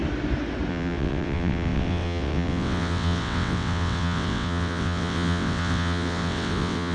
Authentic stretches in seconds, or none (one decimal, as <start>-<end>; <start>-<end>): 0.0-0.7